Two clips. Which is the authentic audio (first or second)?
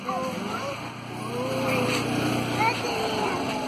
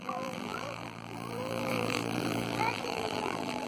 first